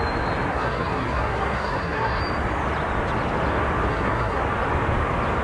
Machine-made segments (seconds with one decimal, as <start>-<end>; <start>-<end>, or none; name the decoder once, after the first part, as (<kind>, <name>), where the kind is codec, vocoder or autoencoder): 0.5-2.2 (codec, SNAC); 3.9-4.4